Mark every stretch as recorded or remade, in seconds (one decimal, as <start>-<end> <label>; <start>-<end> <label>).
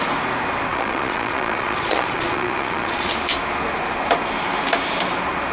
0.0-0.7 recorded; 0.7-3.1 remade; 3.1-5.5 recorded